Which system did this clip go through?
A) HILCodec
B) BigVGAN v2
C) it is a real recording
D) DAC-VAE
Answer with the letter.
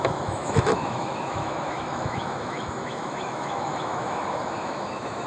D